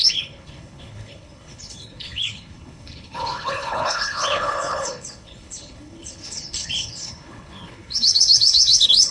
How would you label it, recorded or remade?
remade